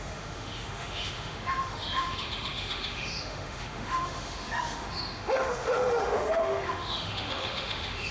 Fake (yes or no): yes